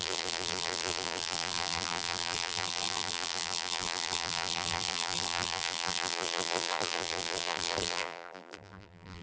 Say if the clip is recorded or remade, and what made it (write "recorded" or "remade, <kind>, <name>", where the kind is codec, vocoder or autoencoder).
remade, vocoder, BigVGAN v2